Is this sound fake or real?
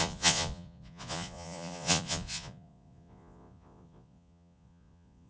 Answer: fake